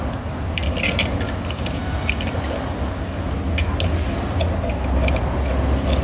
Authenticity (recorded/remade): recorded